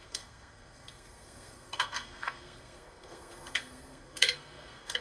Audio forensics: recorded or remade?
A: remade